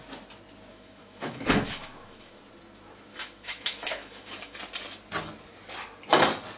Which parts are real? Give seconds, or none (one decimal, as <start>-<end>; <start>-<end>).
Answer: 0.0-0.7; 2.4-3.1; 4.6-6.6